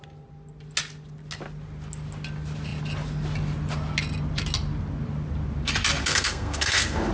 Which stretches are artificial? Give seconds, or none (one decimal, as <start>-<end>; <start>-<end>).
6.0-7.1